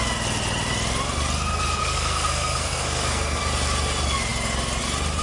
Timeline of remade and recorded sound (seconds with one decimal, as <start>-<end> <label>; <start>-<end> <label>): 0.0-1.8 recorded; 1.8-3.4 remade; 3.4-5.2 recorded

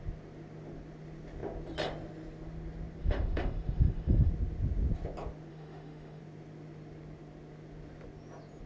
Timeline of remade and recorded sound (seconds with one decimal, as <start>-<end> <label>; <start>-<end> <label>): 0.0-3.0 recorded; 3.0-4.3 remade; 4.3-5.5 recorded; 5.5-6.2 remade; 6.2-8.7 recorded

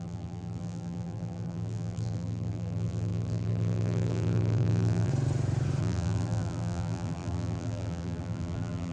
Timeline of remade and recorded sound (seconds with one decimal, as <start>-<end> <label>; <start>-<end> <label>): 0.0-5.1 remade; 5.1-5.8 recorded; 5.8-8.9 remade

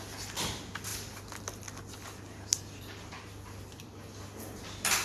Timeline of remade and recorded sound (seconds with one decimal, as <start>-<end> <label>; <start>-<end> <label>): 0.0-5.0 recorded

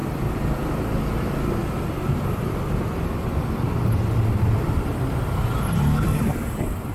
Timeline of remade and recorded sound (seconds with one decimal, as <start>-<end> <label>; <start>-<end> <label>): 0.0-6.9 recorded

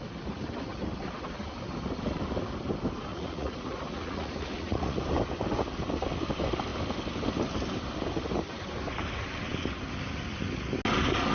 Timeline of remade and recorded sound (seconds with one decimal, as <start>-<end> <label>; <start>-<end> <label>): 0.0-3.1 recorded; 3.1-5.0 remade; 5.0-11.3 recorded